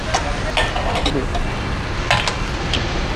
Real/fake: real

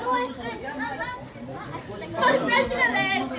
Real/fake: real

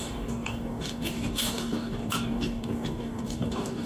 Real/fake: fake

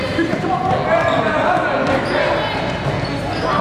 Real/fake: real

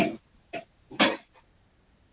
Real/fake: real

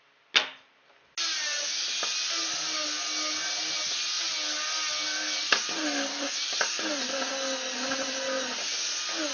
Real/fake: real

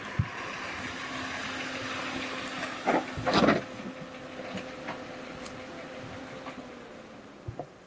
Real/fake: real